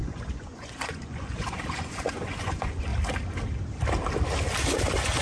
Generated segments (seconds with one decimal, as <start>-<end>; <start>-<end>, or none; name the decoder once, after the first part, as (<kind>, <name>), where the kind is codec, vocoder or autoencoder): 0.0-2.9 (vocoder, Vocos)